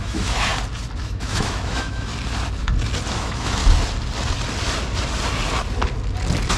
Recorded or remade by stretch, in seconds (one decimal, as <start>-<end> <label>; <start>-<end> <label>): 0.0-0.5 remade; 0.5-1.0 recorded; 1.0-2.1 remade; 2.1-3.1 recorded; 3.1-3.6 remade; 3.6-6.6 recorded